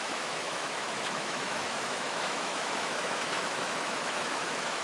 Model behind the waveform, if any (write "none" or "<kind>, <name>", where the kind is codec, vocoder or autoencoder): autoencoder, DAC-VAE